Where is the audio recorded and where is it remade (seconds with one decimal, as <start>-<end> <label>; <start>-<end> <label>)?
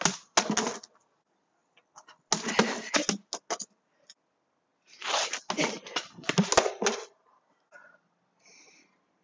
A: 0.0-9.2 recorded